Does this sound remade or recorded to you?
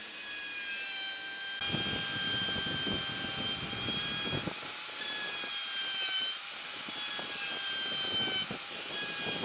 recorded